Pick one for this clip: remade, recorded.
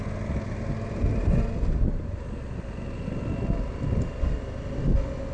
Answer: recorded